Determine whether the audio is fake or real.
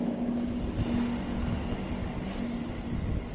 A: real